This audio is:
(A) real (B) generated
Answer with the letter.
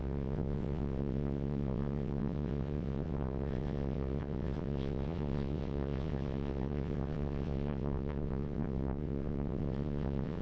B